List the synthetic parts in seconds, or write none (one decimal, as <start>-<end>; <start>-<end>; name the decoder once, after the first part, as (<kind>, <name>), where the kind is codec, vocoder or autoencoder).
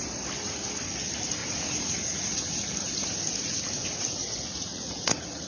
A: 1.4-2.4 (vocoder, Vocos); 4.2-5.5